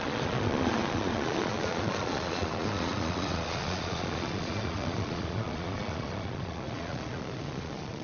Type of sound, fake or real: fake